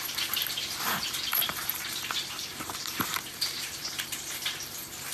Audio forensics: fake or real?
fake